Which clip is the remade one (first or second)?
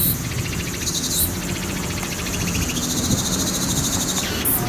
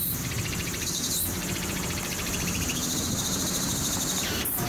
second